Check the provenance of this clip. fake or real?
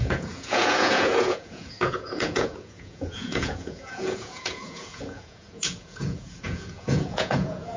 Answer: fake